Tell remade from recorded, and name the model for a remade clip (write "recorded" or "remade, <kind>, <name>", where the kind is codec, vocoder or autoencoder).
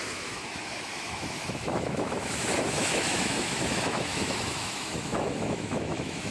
remade, autoencoder, DAC-VAE